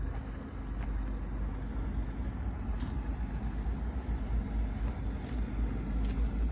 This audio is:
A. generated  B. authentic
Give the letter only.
B